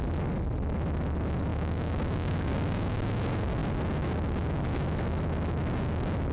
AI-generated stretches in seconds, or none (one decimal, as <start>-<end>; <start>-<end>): 1.5-2.9